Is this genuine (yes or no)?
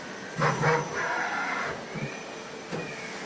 yes